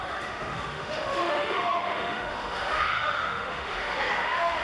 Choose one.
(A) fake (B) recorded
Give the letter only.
A